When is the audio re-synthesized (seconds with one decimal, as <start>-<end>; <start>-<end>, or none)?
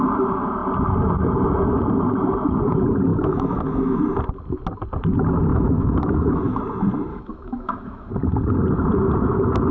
3.1-4.0; 5.5-6.6; 7.1-8.1